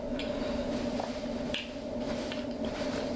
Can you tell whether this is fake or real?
real